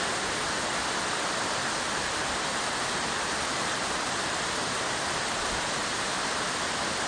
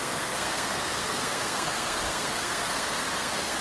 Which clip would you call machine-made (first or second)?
second